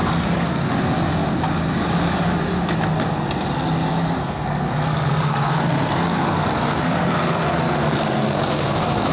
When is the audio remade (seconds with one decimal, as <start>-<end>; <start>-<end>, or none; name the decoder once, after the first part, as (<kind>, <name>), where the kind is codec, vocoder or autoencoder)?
0.0-0.7 (codec, SNAC); 4.2-9.1